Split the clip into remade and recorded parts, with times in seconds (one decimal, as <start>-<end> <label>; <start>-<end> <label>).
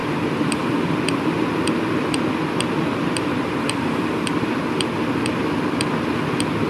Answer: 0.0-6.7 recorded